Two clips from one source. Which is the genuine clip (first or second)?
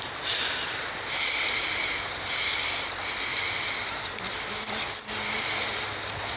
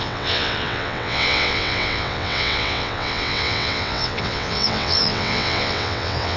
first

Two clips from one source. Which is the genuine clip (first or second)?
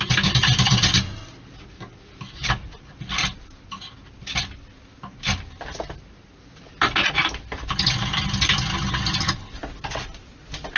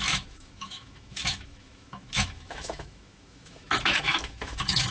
first